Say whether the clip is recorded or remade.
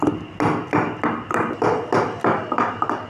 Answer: recorded